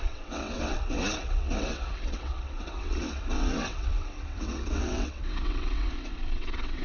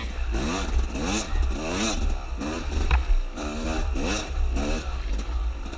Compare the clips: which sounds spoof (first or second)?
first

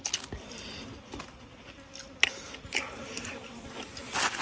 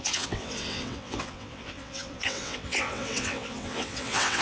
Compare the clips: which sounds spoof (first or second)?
second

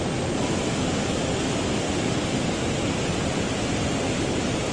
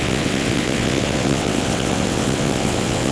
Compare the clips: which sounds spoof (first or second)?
second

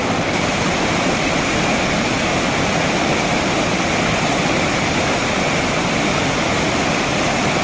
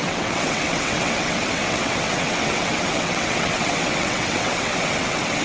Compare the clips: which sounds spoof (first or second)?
second